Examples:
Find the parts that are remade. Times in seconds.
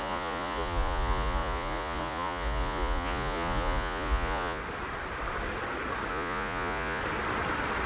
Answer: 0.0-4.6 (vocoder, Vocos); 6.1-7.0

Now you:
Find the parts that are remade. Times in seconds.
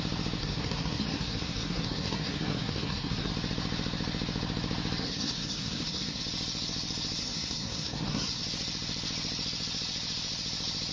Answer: 0.4-3.3 (codec, SNAC); 5.0-6.2; 7.2-8.4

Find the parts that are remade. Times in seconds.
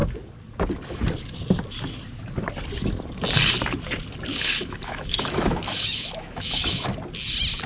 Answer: 4.3-6.9 (autoencoder, DAC-VAE)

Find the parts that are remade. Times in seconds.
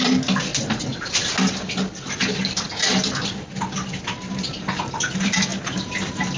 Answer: none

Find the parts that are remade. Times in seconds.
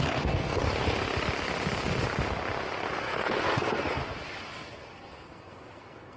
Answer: 0.0-0.6 (codec, SNAC); 2.9-4.0; 4.5-6.2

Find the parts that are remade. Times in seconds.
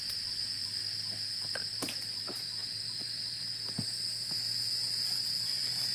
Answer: none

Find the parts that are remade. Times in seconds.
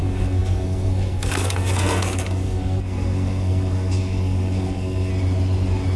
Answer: 0.0-5.1 (codec, SNAC)